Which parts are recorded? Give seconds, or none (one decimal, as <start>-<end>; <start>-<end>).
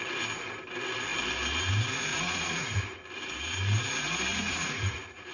0.0-2.1; 2.8-4.3